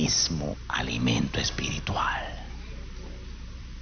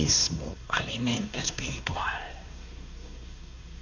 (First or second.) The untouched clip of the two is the first